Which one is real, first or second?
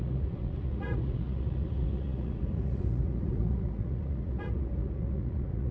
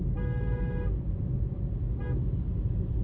second